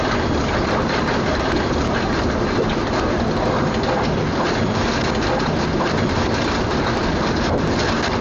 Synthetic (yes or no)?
yes